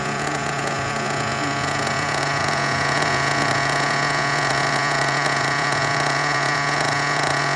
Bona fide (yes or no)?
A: no